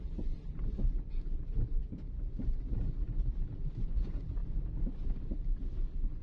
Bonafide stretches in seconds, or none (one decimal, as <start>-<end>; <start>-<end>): 1.8-2.6; 4.4-6.2